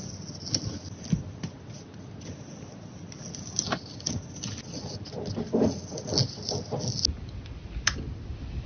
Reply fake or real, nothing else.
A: real